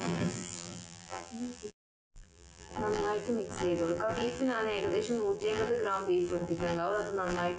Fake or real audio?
fake